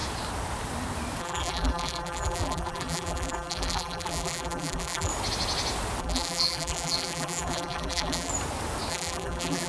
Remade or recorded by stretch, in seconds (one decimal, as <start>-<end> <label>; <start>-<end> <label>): 0.0-1.2 recorded; 1.2-5.1 remade; 5.1-6.0 recorded; 6.0-8.3 remade; 8.3-8.9 recorded; 8.9-9.7 remade